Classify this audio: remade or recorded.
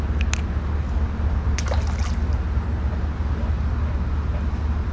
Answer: recorded